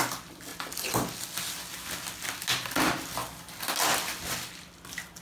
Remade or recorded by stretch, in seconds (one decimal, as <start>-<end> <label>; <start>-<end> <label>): 0.0-5.2 recorded